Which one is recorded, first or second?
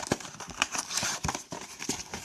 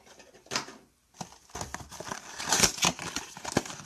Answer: second